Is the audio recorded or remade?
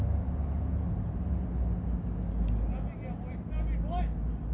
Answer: recorded